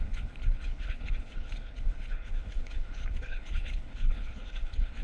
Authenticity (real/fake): fake